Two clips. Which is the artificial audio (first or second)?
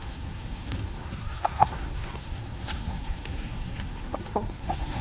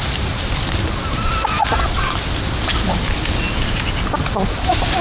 first